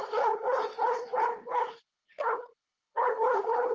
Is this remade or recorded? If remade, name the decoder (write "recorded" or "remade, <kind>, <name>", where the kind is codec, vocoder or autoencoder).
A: remade, codec, HILCodec